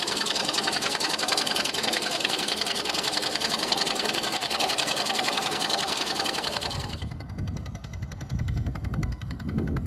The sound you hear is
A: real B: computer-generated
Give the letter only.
B